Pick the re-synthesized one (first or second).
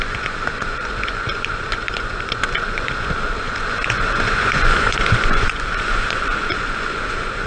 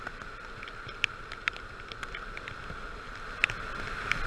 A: first